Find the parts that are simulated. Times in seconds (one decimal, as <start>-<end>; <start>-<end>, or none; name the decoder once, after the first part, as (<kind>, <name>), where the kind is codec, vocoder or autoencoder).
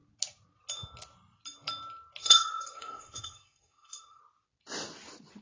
2.2-4.2 (codec, SNAC)